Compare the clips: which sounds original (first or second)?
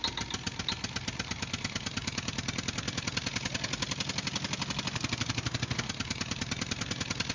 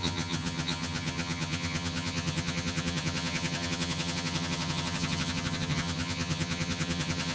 first